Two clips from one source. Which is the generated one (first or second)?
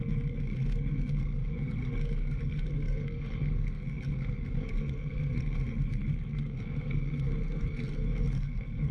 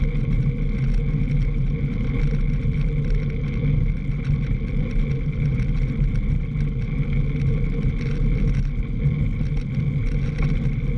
first